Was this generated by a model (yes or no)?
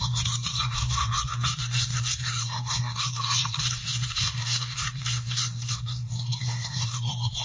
yes